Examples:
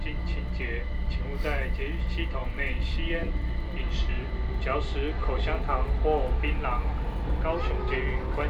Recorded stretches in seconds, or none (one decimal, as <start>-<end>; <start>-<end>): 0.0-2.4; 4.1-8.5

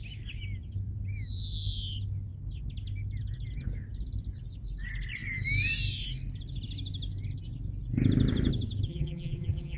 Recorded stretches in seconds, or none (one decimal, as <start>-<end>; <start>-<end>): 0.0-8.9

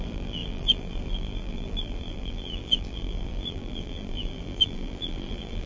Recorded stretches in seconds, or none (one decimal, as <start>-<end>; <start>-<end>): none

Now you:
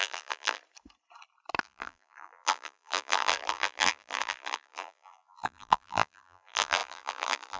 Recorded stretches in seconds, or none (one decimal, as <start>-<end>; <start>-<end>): 0.6-1.6

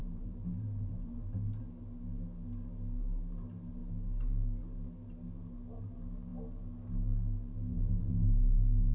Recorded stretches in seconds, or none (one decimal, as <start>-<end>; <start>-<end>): 1.6-8.9

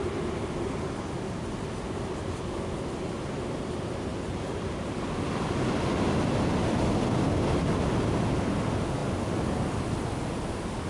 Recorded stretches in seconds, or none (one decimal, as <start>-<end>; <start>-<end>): 0.0-4.1; 5.0-10.9